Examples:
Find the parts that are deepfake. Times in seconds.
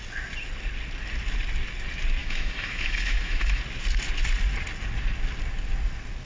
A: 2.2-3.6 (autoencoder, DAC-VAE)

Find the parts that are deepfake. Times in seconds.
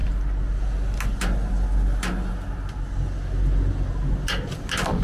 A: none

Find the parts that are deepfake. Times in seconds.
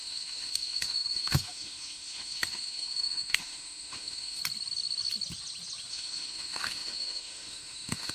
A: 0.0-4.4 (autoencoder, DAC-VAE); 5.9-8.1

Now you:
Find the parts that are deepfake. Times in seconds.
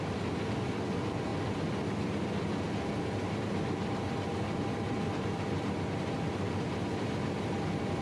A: none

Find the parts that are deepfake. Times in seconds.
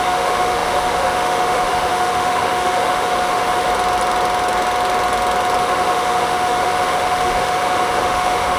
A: 0.0-3.7 (autoencoder, DAC-VAE); 5.6-8.6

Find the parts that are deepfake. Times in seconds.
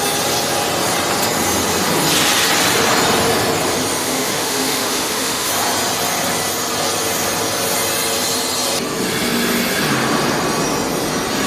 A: 4.0-5.5 (autoencoder, DAC-VAE)